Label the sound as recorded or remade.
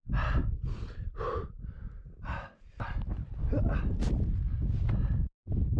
recorded